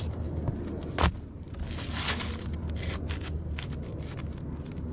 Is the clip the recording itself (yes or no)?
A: yes